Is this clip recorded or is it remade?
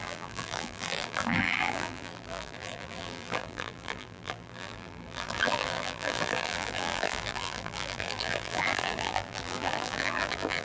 remade